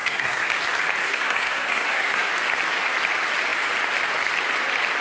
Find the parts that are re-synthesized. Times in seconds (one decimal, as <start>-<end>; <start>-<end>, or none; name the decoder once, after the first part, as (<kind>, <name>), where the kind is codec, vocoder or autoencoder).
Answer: 0.0-0.5 (codec, SNAC); 1.0-2.3